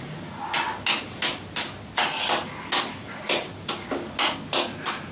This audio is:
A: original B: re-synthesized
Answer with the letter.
A